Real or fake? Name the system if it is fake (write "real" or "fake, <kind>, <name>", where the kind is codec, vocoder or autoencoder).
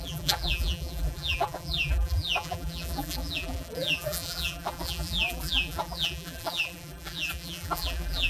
fake, vocoder, BigVGAN v2